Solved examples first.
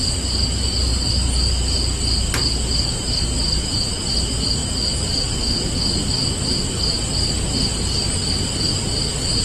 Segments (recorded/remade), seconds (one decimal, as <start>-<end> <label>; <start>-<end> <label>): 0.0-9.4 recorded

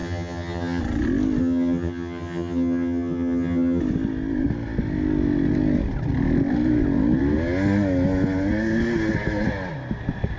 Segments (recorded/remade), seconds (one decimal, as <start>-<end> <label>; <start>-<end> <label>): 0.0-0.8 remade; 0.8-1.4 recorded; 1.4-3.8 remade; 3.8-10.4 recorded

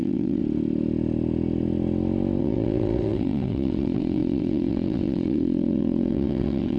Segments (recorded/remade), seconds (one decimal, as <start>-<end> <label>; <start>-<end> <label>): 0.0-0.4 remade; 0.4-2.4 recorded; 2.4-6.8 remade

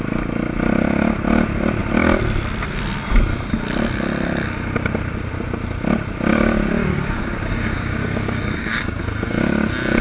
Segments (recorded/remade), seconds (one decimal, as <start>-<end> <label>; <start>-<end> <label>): 0.0-6.3 recorded; 6.3-9.0 remade; 9.0-10.0 recorded

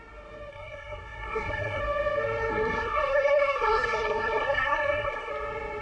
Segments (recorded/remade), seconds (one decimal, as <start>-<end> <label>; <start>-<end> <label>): 0.0-0.5 recorded; 0.5-1.8 remade; 1.8-2.5 recorded; 2.5-5.3 remade; 5.3-5.8 recorded

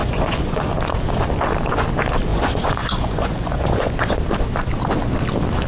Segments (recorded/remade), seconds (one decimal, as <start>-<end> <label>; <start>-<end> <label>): 0.0-0.7 remade; 0.7-2.3 recorded; 2.3-4.2 remade; 4.2-5.7 recorded

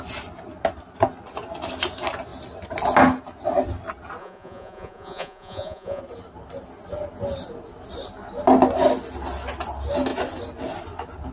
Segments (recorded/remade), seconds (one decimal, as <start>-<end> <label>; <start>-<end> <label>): 0.0-4.2 recorded; 4.2-6.0 remade; 6.0-11.3 recorded

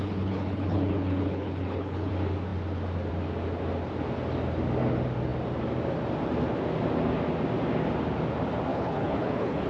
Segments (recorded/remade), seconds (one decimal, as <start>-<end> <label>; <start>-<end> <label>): 0.0-2.1 remade; 2.1-8.7 recorded; 8.7-9.7 remade